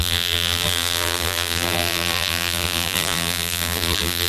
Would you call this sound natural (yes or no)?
no